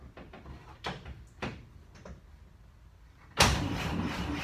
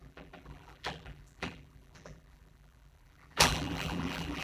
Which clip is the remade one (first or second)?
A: second